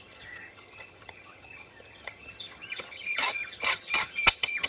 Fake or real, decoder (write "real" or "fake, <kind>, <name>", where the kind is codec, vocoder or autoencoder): fake, vocoder, HiFi-GAN